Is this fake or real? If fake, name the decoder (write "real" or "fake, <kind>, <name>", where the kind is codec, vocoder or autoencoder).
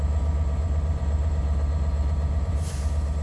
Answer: fake, vocoder, BigVGAN v2